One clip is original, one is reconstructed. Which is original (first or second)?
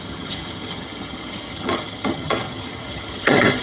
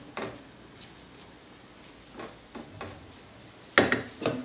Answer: second